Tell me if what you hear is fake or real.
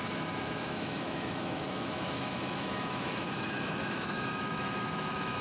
fake